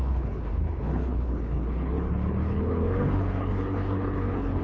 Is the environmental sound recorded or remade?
remade